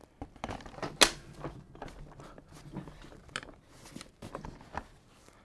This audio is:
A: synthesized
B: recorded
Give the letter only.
B